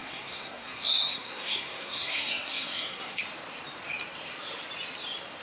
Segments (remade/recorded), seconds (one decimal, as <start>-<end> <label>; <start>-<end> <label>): 0.0-3.2 remade; 3.2-5.4 recorded